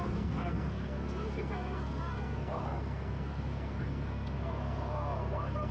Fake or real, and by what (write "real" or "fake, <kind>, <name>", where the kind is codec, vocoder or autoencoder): fake, codec, SNAC